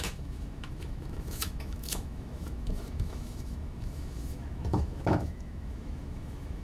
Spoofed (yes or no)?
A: yes